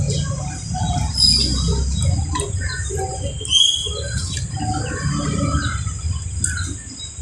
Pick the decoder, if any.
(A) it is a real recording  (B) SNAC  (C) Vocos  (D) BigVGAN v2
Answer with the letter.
A